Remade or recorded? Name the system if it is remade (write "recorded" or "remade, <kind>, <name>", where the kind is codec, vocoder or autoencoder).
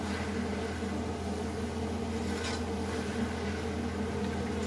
recorded